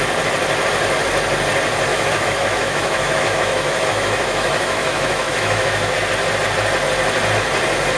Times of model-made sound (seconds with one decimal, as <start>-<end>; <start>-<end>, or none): 1.9-5.9